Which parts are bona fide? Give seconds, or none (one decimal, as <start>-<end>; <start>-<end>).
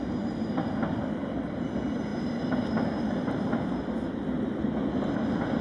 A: 0.0-5.6